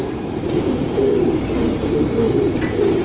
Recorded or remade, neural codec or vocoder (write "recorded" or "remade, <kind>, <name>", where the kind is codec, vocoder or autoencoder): recorded